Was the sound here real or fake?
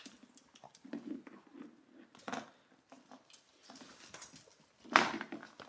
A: real